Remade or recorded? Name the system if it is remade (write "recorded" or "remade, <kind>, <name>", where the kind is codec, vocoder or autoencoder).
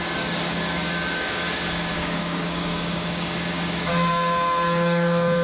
remade, codec, DAC